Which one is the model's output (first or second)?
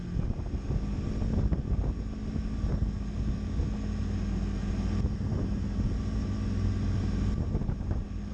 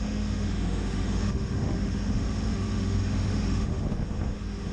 second